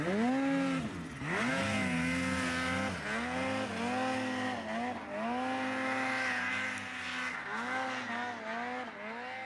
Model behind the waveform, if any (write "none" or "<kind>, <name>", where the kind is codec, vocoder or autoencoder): none